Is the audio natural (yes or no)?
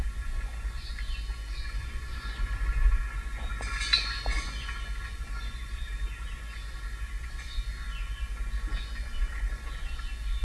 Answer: no